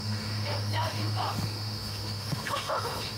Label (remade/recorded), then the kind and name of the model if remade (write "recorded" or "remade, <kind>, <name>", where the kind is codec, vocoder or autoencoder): remade, autoencoder, DAC-VAE